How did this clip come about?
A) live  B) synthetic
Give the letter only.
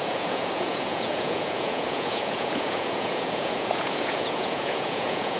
B